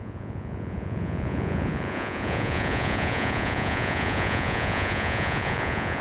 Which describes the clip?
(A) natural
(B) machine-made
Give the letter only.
B